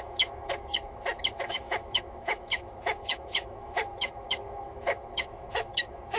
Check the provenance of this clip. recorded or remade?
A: remade